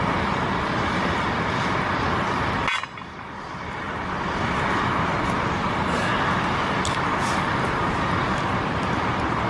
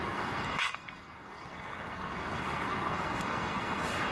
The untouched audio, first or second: first